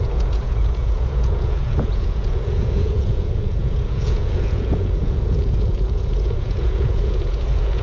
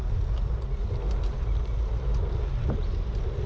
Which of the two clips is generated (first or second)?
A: first